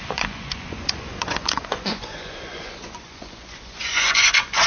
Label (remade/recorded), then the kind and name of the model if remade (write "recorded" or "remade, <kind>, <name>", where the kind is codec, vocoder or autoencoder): remade, vocoder, Vocos